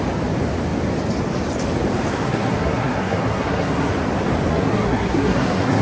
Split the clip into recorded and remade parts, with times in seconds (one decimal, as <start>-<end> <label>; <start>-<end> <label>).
0.0-2.1 recorded; 2.1-3.9 remade; 3.9-4.5 recorded; 4.5-5.8 remade